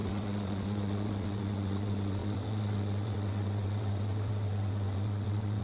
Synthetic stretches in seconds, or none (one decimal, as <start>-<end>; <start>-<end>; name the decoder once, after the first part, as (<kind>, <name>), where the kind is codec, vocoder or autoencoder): 0.0-5.6 (vocoder, WaveNeXt)